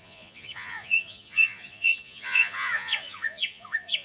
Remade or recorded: remade